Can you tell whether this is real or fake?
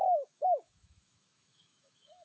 fake